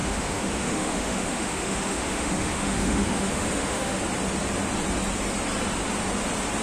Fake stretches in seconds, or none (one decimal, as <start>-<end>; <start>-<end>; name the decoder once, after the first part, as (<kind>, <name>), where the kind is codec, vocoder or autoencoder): 0.0-4.0 (autoencoder, DAC-VAE)

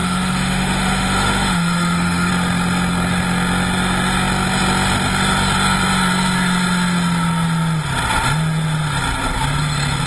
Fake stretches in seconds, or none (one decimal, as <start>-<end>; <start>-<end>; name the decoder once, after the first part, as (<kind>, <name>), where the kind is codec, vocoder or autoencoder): 0.0-2.3 (autoencoder, DAC-VAE)

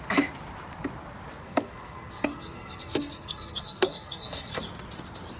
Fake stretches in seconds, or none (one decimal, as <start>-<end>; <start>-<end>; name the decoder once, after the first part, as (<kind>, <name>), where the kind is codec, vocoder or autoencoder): 1.4-4.6 (codec, SNAC)

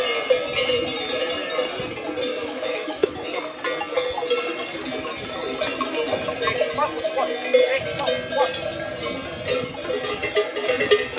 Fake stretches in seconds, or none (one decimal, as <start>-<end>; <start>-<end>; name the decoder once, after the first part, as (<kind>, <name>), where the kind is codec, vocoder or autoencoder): 2.3-3.4 (autoencoder, DAC-VAE)